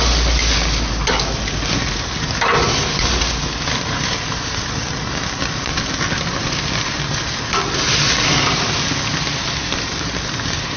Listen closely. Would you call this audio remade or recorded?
recorded